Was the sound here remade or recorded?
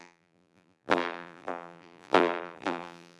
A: remade